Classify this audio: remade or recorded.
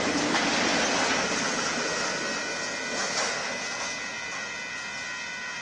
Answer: recorded